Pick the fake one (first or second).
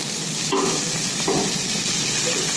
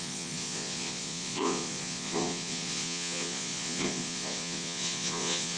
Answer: second